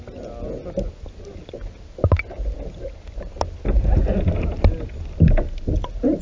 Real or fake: real